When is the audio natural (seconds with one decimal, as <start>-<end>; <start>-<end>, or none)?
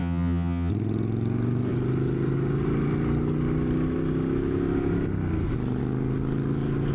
0.7-6.9